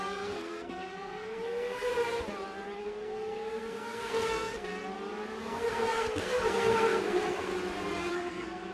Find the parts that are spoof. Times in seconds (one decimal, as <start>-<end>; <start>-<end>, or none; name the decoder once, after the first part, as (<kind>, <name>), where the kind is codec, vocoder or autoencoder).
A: 0.0-1.9 (codec, SNAC); 2.8-4.7; 5.4-7.5; 8.1-8.7